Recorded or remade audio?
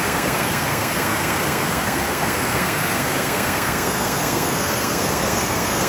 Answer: remade